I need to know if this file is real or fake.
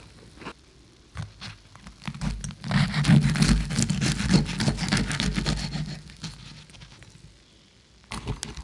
real